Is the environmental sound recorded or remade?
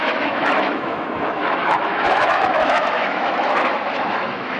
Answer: remade